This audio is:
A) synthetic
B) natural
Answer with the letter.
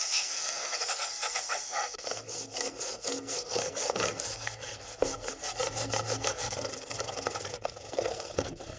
A